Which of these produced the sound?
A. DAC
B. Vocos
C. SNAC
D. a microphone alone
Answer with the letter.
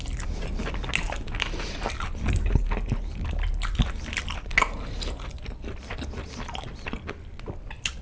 D